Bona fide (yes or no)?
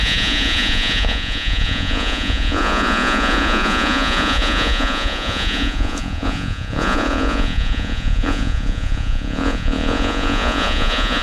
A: no